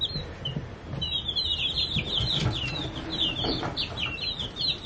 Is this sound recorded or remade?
recorded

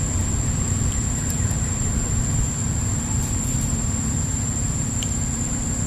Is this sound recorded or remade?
remade